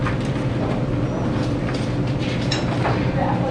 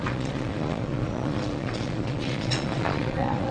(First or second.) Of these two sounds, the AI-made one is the second